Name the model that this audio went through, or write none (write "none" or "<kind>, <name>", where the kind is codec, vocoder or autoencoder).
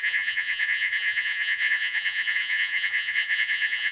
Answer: vocoder, Vocos